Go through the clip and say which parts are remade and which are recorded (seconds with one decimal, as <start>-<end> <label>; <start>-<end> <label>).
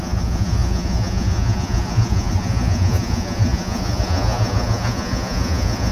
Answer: 0.0-5.9 remade